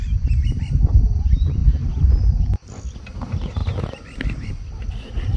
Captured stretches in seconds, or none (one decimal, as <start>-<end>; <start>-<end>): 0.0-5.4